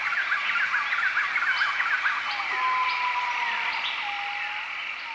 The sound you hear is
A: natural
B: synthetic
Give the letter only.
A